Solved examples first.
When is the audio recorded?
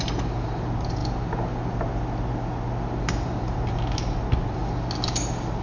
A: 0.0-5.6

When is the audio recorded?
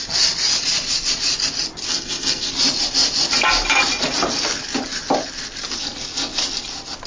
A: 0.0-1.9; 2.5-7.1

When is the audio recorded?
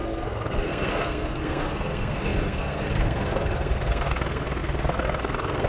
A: none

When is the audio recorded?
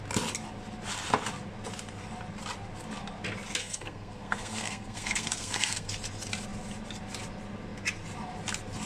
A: 0.0-3.6; 5.9-8.9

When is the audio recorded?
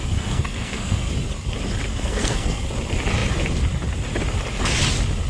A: 1.1-1.9; 2.6-5.3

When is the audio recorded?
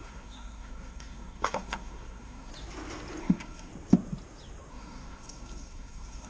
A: 2.5-3.2; 3.7-4.7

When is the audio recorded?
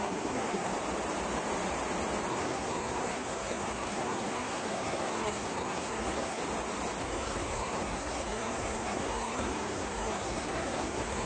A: 0.7-2.3; 6.4-7.0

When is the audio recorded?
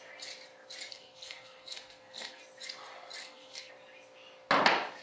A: 0.0-0.9; 2.4-3.2; 3.7-5.0